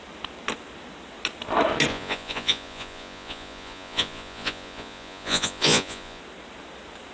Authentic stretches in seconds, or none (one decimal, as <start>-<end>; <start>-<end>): 0.0-1.9; 6.2-7.1